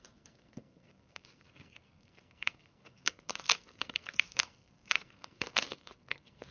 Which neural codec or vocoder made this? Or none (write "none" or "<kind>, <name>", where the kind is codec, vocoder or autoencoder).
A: codec, SNAC